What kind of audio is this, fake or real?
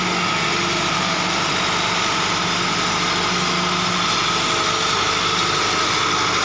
real